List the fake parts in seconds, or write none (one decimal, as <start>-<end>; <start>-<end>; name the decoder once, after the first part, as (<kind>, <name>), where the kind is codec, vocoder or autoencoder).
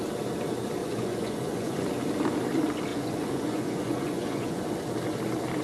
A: 0.8-1.9 (vocoder, Vocos); 2.9-4.6